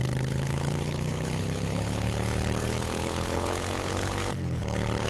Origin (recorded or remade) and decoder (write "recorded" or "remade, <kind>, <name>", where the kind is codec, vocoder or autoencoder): remade, codec, HILCodec